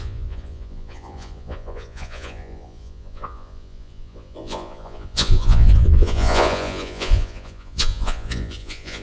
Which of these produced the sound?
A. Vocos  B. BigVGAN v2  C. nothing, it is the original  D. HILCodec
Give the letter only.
A